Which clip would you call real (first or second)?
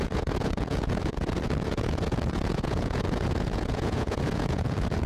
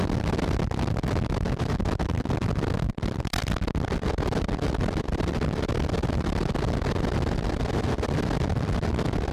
second